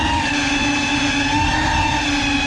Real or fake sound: real